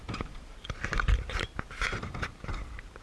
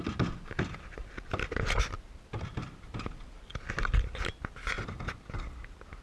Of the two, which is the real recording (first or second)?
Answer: second